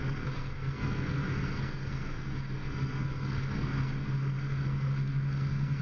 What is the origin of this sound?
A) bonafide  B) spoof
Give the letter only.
B